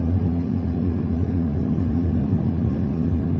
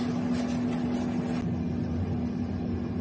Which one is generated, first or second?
first